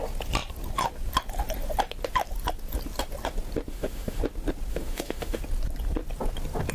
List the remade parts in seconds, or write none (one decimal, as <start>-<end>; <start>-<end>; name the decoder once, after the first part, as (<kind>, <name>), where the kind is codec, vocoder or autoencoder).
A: 3.7-4.2 (autoencoder, DAC-VAE); 4.7-5.4